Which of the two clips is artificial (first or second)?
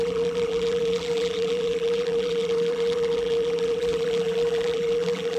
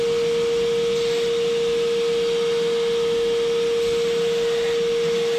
first